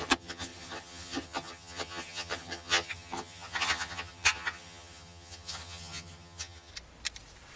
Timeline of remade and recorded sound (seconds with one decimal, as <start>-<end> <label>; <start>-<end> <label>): 0.0-6.7 remade; 6.7-7.6 recorded